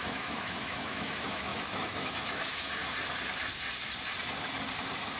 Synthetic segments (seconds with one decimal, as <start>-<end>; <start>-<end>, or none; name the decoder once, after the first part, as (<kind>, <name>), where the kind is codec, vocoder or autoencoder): 0.0-2.8 (autoencoder, DAC-VAE)